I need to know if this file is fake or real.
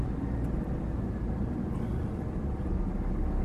real